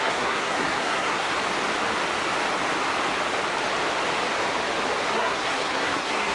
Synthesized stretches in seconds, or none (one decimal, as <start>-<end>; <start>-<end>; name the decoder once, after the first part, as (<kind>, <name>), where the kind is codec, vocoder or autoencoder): 0.0-1.3 (codec, SNAC); 5.1-6.3